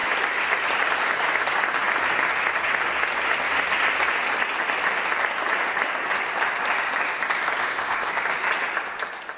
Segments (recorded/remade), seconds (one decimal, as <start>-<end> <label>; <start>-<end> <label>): 0.0-7.6 recorded; 7.6-8.1 remade; 8.1-9.4 recorded